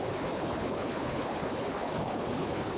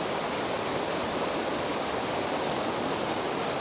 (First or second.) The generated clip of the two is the first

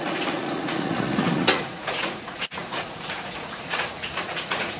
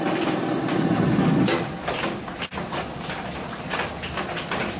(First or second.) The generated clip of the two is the first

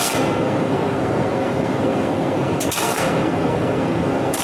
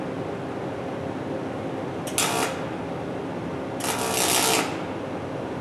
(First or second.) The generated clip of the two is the first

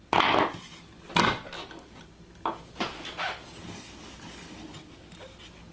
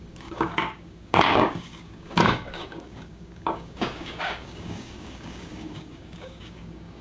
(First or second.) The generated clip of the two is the second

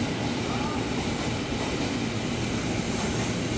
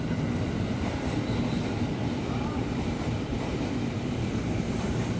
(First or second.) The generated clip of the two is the second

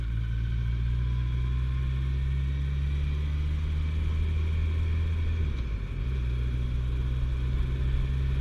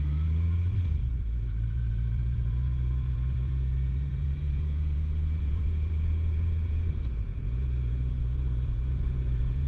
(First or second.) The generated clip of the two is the second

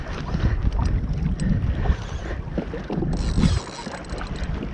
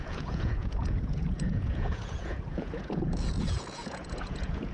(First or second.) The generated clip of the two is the second